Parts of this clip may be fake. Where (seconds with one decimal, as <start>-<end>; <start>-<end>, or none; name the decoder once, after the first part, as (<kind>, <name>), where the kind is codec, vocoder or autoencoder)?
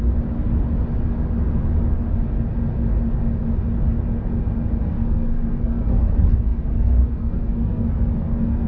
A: 4.8-8.7 (codec, SNAC)